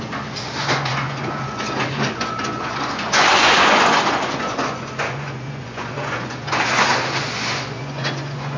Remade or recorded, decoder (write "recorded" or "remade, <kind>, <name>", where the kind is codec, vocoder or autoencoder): remade, vocoder, Vocos